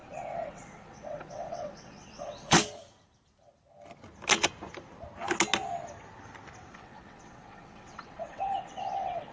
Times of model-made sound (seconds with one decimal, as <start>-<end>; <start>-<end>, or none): 0.0-2.6; 6.7-9.3